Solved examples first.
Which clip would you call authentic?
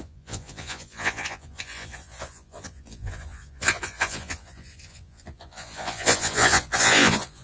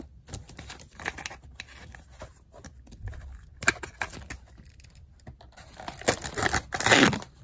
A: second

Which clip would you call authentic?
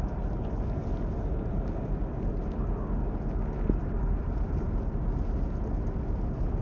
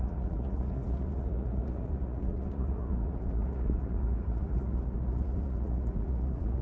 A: first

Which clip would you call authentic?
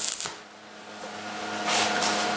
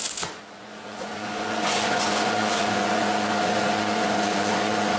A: first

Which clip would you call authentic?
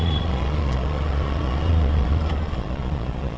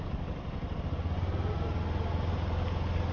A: second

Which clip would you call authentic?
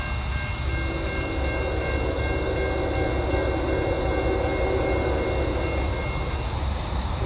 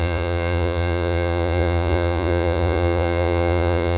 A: first